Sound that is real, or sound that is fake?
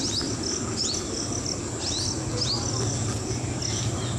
real